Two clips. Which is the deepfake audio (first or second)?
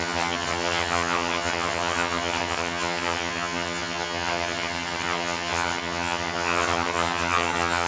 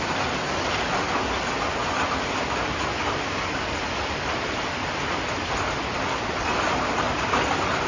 first